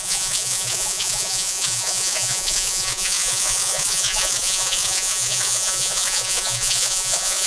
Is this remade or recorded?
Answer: remade